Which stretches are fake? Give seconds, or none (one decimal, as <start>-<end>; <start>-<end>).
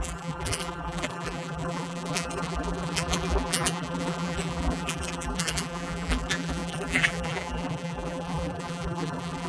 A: 0.0-9.5